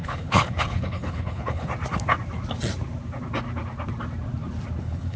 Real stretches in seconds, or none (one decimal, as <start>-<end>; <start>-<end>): 1.7-4.8